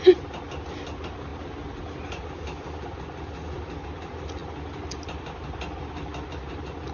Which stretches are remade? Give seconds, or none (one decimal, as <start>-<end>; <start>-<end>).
none